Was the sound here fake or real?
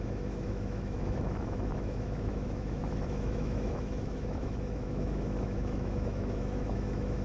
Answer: fake